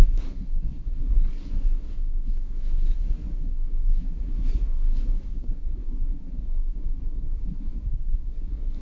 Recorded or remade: remade